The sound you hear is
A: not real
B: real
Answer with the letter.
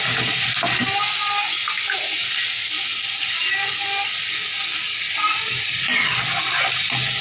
B